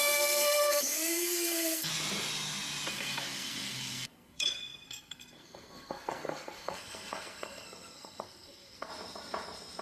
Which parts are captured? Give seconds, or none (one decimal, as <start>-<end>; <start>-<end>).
1.9-2.9; 8.9-9.8